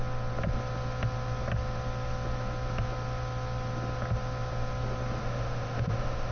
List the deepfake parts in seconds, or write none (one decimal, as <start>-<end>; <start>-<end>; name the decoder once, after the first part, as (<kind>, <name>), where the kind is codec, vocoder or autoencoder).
5.2-6.3 (autoencoder, DAC-VAE)